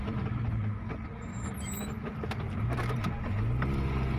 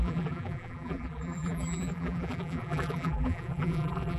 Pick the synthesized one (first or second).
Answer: second